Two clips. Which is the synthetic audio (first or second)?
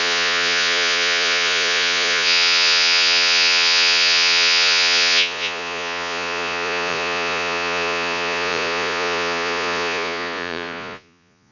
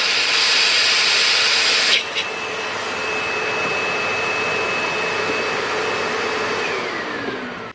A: first